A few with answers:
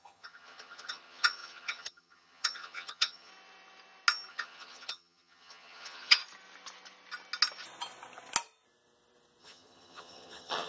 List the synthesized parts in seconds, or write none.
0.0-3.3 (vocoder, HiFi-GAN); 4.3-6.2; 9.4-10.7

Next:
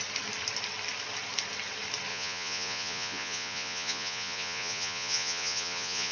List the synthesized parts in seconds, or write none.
2.1-6.1 (vocoder, Vocos)

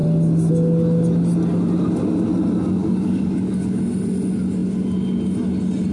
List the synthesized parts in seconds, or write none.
2.8-3.8 (codec, DAC)

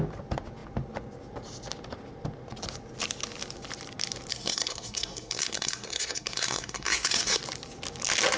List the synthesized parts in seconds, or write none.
4.3-7.4 (codec, SNAC)

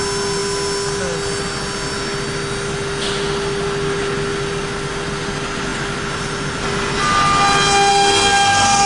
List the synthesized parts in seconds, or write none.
7.9-8.9 (codec, SNAC)

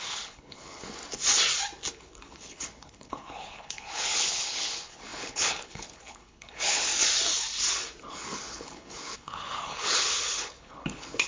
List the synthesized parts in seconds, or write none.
0.0-1.0 (codec, HILCodec); 1.9-6.9; 8.1-11.3

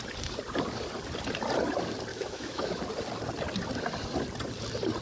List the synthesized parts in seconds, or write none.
2.1-2.8 (autoencoder, DAC-VAE)